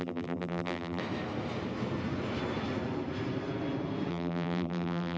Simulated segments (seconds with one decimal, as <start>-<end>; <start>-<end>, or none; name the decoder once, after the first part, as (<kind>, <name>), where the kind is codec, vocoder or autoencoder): 0.0-1.0 (vocoder, BigVGAN v2); 4.1-5.2